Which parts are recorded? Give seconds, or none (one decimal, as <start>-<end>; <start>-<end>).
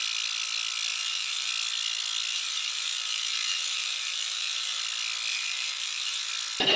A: 0.0-0.9; 1.5-2.3; 4.8-5.3; 6.3-6.8